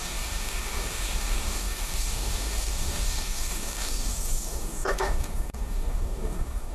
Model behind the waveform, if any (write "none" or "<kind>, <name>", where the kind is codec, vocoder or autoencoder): codec, DAC